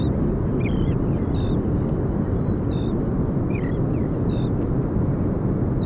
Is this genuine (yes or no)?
yes